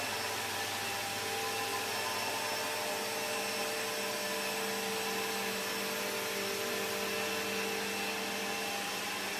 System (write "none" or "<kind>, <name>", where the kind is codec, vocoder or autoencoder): none